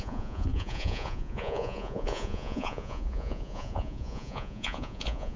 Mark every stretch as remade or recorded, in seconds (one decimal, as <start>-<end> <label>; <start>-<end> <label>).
0.0-5.4 remade

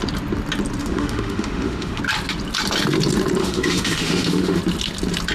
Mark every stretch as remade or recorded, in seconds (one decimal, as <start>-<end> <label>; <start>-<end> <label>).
0.0-0.8 recorded; 0.8-2.0 remade; 2.0-3.4 recorded; 3.4-4.6 remade; 4.6-5.3 recorded

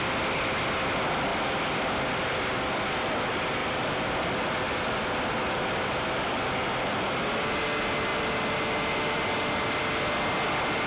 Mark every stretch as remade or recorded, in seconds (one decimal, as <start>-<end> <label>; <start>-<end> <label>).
0.0-3.6 recorded; 3.6-4.5 remade; 4.5-8.1 recorded; 8.1-10.0 remade; 10.0-10.9 recorded

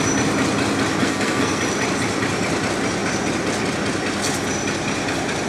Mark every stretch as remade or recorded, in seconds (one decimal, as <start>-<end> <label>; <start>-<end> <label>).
0.0-1.0 recorded; 1.0-1.6 remade; 1.6-5.5 recorded